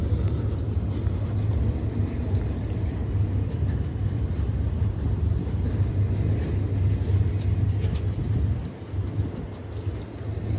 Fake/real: real